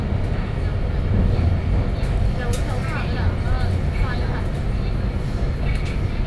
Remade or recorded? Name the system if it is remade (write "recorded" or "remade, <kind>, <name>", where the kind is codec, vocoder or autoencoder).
recorded